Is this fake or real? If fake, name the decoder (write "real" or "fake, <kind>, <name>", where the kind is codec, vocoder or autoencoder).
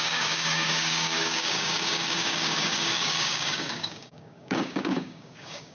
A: fake, codec, DAC